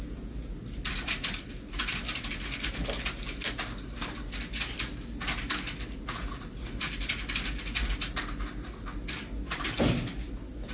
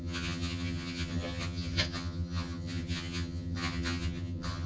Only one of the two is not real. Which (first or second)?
second